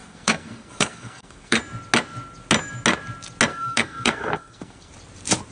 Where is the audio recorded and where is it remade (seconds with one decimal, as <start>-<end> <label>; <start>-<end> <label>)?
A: 0.0-1.6 remade; 1.6-3.5 recorded; 3.5-4.9 remade; 4.9-5.5 recorded